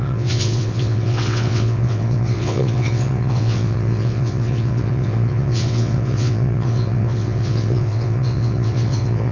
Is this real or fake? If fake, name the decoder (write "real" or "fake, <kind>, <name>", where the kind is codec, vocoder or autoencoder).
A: fake, vocoder, WaveNeXt